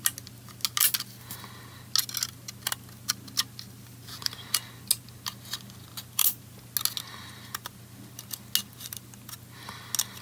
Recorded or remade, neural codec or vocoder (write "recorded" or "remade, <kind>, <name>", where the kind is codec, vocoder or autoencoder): recorded